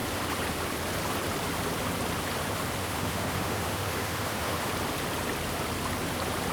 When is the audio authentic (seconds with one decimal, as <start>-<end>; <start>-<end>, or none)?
0.0-2.8; 4.7-6.5